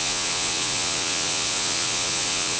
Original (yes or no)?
no